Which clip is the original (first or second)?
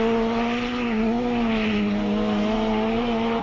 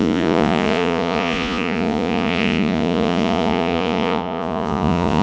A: first